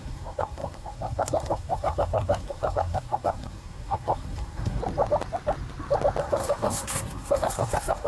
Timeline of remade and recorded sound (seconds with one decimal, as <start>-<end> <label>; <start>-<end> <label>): 0.0-4.8 remade; 4.8-6.2 recorded; 6.2-8.1 remade